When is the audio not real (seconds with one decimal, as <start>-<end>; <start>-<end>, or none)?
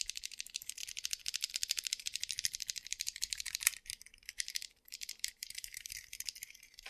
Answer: 0.0-0.8; 1.5-6.9